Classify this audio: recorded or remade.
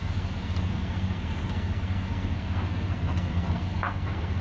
remade